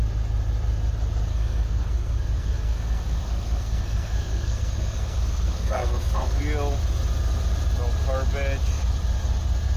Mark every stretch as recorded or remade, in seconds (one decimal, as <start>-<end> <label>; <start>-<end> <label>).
0.0-1.3 recorded; 1.3-6.4 remade; 6.4-9.8 recorded